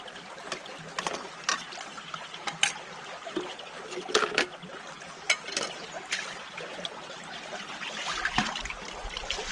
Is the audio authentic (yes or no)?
yes